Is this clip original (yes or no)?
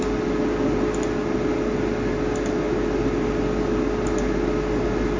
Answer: yes